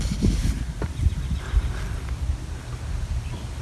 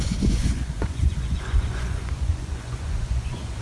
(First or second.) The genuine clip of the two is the first